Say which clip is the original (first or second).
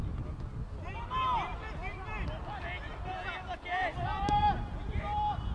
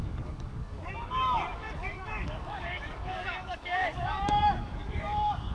first